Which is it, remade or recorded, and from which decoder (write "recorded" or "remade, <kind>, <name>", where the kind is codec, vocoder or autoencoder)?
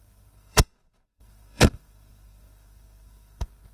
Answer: remade, codec, SNAC